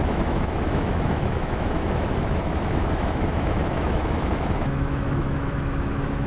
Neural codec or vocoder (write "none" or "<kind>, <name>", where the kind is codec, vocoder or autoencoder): autoencoder, DAC-VAE